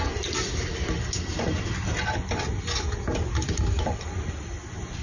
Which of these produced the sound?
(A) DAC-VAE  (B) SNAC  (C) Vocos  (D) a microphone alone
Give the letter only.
D